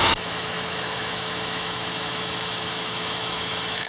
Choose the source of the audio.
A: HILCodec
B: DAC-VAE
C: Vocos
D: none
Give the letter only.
B